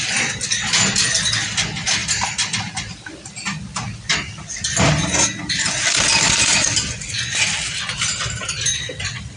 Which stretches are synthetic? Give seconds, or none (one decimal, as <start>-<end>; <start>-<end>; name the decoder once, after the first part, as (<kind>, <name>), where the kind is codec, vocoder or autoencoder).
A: 2.0-5.7 (vocoder, BigVGAN v2)